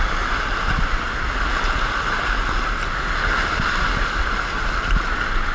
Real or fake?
real